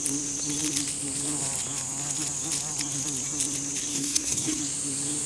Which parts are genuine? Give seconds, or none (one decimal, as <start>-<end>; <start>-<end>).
0.0-3.9; 4.6-5.3